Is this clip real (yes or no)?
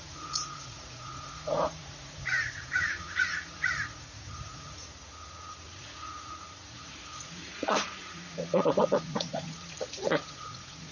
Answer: no